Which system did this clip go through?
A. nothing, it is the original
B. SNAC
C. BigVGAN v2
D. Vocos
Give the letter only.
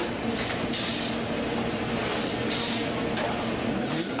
A